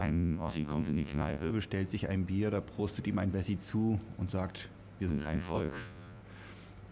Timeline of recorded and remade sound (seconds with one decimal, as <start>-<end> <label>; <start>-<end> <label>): 0.0-1.5 remade; 1.5-5.1 recorded; 5.1-6.2 remade; 6.2-6.9 recorded